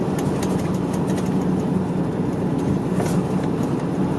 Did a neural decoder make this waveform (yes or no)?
no